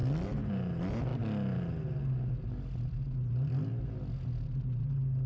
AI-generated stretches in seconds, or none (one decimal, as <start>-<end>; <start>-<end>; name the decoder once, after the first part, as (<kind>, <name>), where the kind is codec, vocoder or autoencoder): none